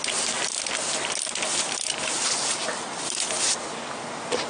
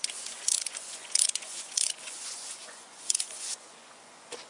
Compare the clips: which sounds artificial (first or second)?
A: second